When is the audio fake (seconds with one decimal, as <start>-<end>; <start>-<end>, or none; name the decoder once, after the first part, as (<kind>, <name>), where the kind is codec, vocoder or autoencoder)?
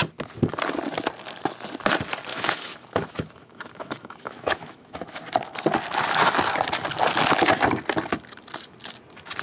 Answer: 2.3-5.2 (autoencoder, DAC-VAE)